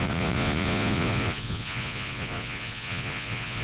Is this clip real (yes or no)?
no